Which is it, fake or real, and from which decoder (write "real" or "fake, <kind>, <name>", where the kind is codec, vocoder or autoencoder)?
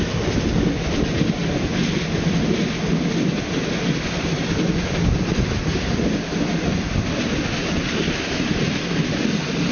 real